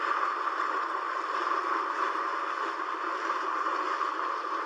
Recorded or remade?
recorded